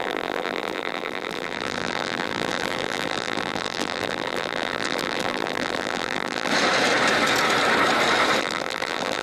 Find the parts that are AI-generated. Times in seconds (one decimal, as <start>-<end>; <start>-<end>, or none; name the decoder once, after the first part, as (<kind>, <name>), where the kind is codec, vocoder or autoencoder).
0.0-6.5 (vocoder, BigVGAN v2); 8.4-9.2